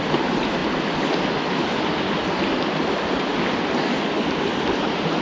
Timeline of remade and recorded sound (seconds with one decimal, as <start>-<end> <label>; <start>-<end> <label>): 0.0-5.2 recorded